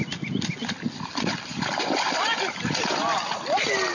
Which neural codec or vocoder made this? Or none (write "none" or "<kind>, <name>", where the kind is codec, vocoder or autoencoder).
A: none